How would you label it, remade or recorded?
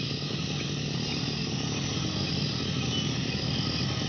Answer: recorded